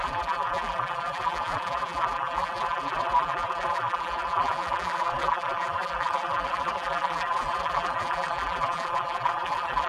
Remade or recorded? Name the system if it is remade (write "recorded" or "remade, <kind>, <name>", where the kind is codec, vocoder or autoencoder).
remade, vocoder, BigVGAN v2